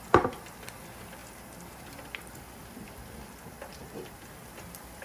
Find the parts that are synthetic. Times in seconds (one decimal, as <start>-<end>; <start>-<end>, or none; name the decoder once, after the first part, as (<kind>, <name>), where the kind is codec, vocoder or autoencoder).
0.0-5.0 (vocoder, BigVGAN v2)